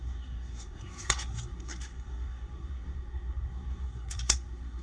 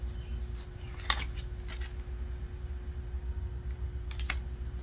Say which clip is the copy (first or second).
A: first